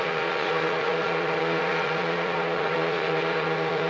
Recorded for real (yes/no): no